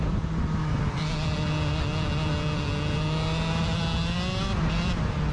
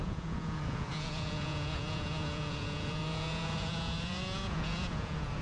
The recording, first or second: first